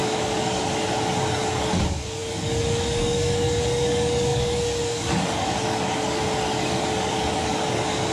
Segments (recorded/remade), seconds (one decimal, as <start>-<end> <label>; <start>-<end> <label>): 0.0-8.1 remade